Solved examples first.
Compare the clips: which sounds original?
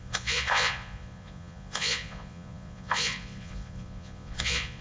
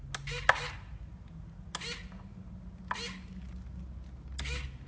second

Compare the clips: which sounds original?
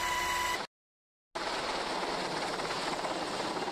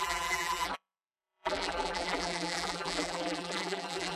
first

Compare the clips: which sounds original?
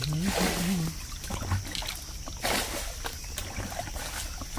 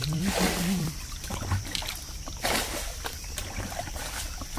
first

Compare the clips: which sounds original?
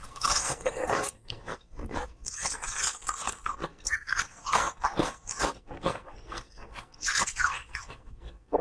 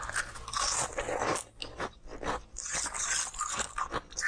second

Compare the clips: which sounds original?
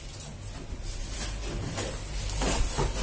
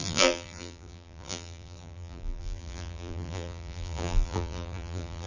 first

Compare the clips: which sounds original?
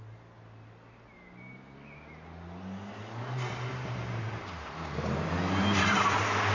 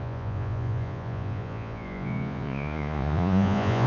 first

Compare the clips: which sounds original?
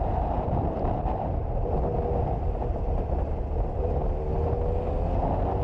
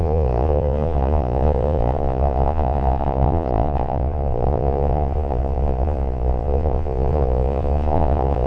first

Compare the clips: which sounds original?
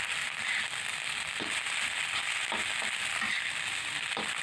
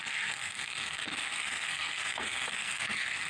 first